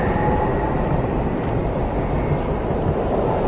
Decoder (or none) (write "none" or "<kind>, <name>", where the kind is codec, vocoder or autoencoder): none